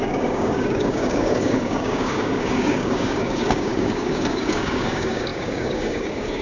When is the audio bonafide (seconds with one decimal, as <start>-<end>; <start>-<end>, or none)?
none